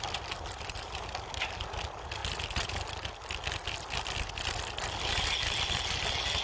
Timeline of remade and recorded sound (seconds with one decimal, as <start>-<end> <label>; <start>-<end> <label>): 0.0-6.4 recorded